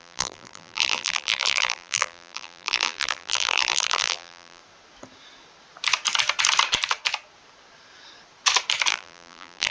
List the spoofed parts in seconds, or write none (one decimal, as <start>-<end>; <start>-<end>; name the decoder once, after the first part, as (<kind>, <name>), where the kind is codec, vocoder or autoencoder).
0.0-4.6 (vocoder, BigVGAN v2); 8.9-9.7

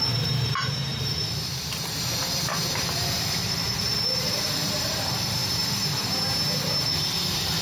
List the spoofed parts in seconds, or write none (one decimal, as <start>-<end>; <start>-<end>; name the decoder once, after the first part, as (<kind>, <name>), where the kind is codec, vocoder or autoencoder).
0.0-5.4 (vocoder, BigVGAN v2); 6.8-7.6

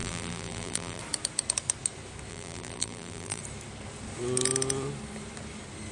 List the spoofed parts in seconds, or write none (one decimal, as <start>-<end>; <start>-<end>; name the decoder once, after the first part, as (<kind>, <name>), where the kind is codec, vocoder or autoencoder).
0.0-1.0 (vocoder, BigVGAN v2); 2.3-3.4

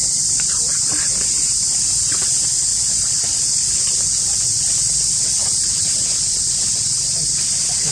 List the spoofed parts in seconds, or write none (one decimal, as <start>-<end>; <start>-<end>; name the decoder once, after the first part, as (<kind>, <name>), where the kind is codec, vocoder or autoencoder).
none

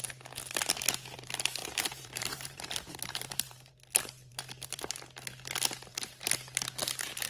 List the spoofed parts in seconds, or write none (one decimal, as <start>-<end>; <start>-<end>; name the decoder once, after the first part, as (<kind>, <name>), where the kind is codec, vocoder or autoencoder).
1.6-3.7 (vocoder, BigVGAN v2); 4.3-4.9